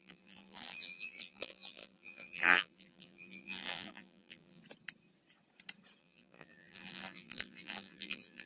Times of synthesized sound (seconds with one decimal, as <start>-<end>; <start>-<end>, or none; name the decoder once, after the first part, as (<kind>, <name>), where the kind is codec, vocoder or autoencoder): 0.0-4.6 (vocoder, BigVGAN v2); 6.0-8.5